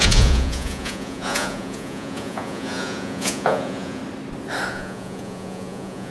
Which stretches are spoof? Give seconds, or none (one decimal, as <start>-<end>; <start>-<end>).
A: 0.0-4.0; 4.7-6.1